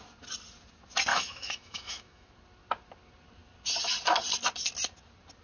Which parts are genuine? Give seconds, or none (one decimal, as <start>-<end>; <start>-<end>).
0.0-1.1; 2.3-5.4